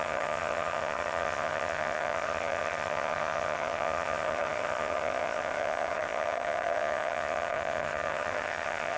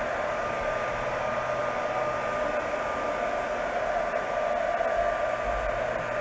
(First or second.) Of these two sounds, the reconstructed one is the first